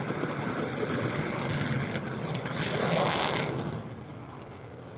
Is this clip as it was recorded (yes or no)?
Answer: yes